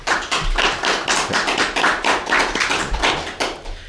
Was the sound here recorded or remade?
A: recorded